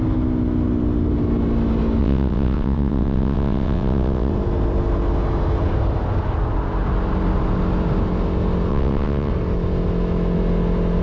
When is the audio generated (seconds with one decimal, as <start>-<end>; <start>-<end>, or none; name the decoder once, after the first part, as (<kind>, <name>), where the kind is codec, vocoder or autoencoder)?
2.0-4.3 (vocoder, WaveNeXt); 8.7-9.3